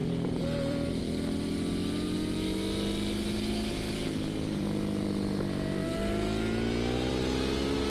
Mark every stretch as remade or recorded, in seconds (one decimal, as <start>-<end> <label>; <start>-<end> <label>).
0.0-0.9 remade; 0.9-7.9 recorded